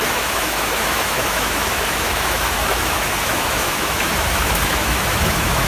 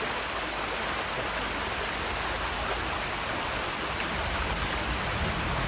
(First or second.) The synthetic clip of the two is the first